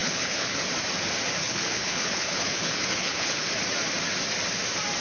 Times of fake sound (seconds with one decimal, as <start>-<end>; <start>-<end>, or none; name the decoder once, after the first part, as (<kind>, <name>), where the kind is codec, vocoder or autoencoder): 0.0-0.6 (codec, HILCodec); 1.4-3.5